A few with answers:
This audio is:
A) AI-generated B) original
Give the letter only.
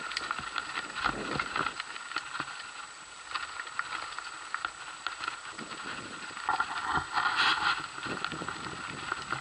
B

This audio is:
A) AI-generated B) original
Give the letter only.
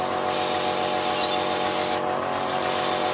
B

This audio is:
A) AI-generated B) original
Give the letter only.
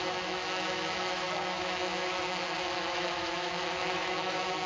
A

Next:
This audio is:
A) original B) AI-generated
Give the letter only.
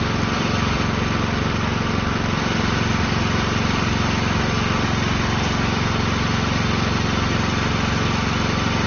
A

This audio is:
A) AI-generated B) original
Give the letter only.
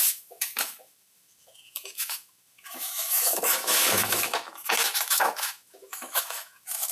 A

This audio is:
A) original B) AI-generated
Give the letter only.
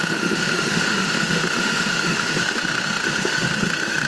B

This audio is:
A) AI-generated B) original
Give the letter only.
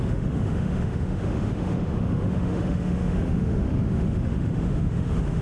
A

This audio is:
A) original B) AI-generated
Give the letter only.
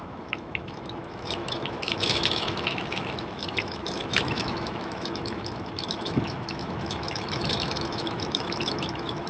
B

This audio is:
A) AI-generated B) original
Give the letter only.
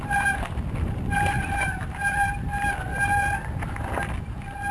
B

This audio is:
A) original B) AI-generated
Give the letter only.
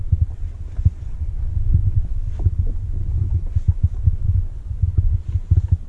A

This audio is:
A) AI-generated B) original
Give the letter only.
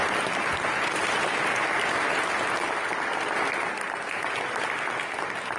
B